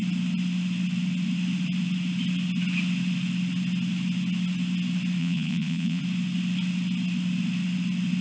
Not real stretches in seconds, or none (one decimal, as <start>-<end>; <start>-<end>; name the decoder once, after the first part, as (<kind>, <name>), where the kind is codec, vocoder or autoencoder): 5.2-6.0 (vocoder, Vocos)